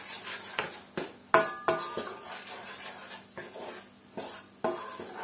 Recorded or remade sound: recorded